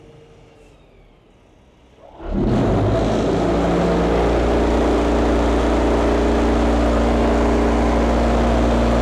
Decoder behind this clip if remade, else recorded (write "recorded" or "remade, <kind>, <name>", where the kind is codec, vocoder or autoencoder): recorded